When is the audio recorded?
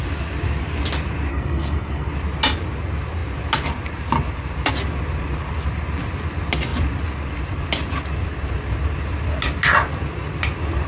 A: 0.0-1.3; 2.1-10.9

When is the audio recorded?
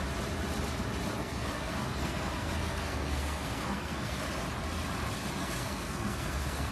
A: 0.0-1.2; 4.2-5.4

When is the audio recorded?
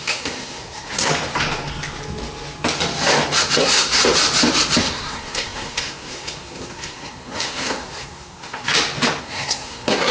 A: 1.1-3.6; 4.0-4.8; 8.7-9.2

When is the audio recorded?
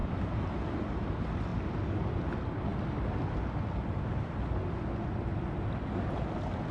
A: 0.0-6.7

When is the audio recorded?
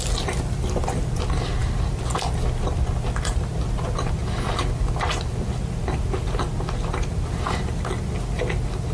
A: 0.0-8.9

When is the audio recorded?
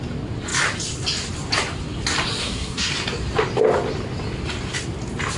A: 0.0-2.4; 2.9-5.4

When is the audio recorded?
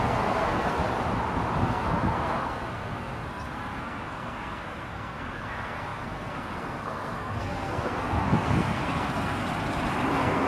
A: 0.8-1.6; 9.4-10.1